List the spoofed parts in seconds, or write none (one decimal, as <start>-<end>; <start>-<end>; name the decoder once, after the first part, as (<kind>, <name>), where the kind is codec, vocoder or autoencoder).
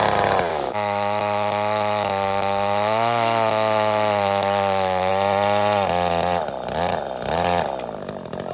0.5-5.1 (autoencoder, DAC-VAE)